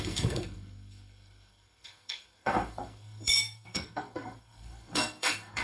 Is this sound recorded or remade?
remade